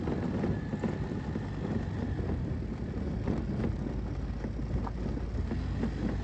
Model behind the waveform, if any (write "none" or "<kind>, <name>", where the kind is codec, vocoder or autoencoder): none